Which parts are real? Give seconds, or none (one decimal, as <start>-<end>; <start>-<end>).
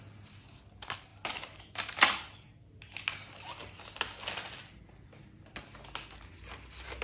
0.0-7.0